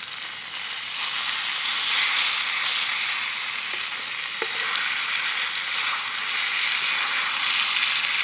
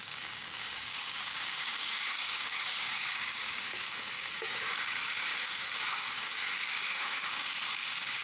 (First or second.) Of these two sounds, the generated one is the second